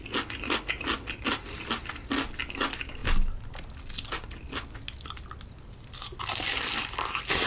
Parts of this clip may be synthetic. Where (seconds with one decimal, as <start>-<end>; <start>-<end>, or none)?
none

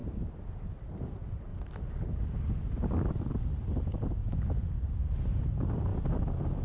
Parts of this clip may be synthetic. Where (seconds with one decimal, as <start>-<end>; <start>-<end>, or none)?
5.9-6.6